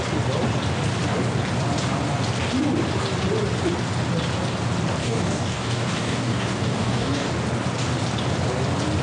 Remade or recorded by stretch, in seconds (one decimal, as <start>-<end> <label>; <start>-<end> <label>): 0.0-5.0 recorded; 5.0-7.3 remade; 7.3-9.0 recorded